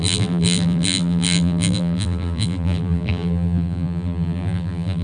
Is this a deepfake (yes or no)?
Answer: yes